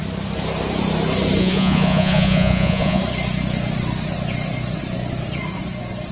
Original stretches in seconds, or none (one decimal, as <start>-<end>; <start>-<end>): 0.0-1.4; 3.0-6.1